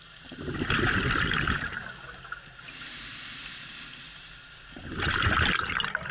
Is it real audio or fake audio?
real